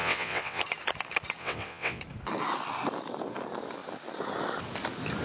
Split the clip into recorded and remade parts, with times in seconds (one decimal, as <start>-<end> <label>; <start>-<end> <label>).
0.0-0.6 remade; 0.6-1.4 recorded; 1.4-2.0 remade; 2.0-5.2 recorded